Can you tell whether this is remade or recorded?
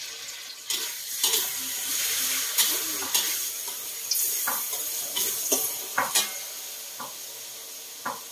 recorded